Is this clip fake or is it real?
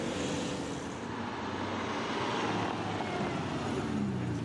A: real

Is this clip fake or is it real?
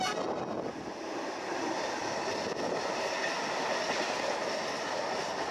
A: real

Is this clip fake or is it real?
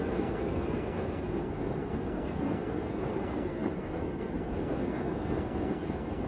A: fake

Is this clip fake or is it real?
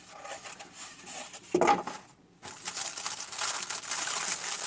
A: real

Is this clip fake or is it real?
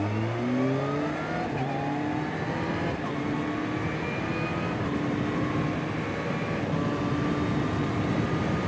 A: real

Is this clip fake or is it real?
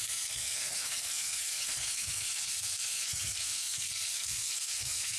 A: fake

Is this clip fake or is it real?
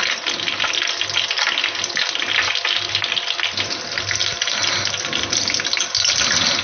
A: real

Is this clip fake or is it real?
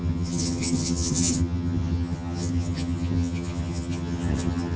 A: fake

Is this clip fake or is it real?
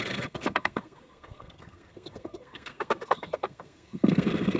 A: fake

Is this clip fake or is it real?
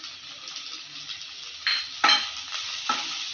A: real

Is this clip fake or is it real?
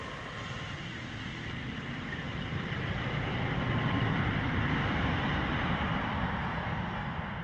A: real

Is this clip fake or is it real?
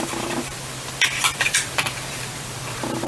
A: fake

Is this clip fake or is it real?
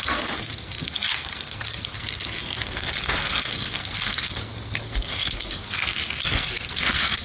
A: fake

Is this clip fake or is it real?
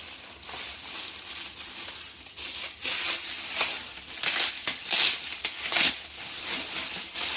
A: real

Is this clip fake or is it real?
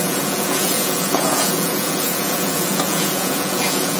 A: fake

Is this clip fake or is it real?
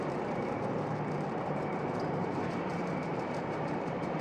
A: fake